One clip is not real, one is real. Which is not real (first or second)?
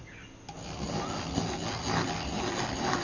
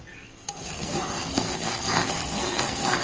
second